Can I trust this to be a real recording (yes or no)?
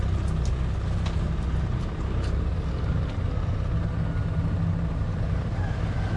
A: yes